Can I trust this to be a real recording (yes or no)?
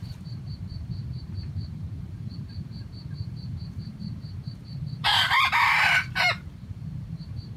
no